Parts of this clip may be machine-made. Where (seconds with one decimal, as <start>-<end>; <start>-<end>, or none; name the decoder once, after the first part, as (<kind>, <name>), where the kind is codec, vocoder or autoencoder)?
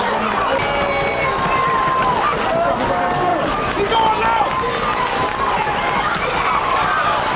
none